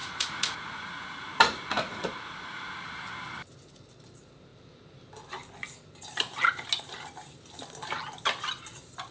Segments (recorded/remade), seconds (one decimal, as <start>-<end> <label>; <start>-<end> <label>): 0.0-2.9 remade; 2.9-9.1 recorded